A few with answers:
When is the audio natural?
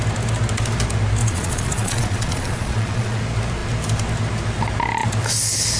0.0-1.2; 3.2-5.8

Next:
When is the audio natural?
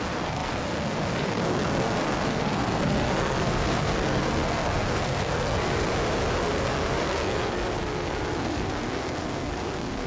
5.9-6.4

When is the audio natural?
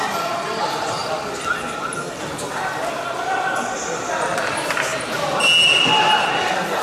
0.0-6.8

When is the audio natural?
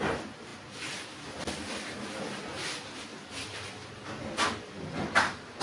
0.0-5.6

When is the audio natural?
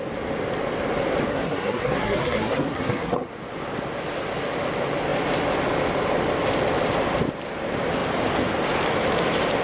0.0-1.3; 3.3-9.6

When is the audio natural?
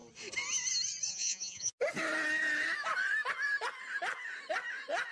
0.0-1.1; 1.7-5.1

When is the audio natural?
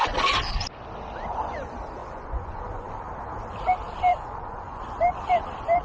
0.0-2.0; 2.9-4.1; 4.8-5.8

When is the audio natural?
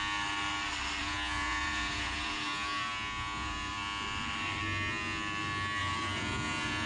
0.0-1.0; 3.7-5.8